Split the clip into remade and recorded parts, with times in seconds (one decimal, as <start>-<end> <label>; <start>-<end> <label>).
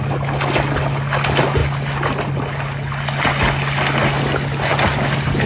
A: 0.0-5.5 recorded